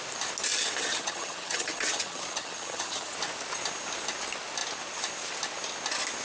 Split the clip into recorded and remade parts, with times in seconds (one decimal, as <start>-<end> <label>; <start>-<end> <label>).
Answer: 0.0-0.8 recorded; 0.8-3.1 remade; 3.1-6.2 recorded